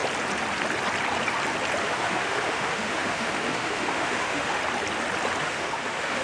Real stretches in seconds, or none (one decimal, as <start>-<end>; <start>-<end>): 0.0-1.8; 4.6-5.4